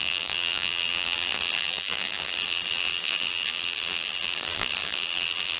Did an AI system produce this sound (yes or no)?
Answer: yes